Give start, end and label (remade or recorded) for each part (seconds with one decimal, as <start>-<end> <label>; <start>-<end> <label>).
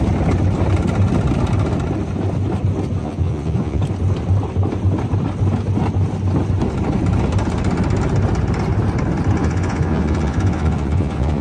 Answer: 0.0-3.0 recorded; 3.0-3.8 remade; 3.8-9.4 recorded; 9.4-11.4 remade